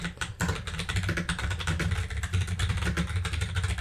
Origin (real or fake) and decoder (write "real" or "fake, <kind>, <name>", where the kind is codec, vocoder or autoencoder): fake, vocoder, BigVGAN v2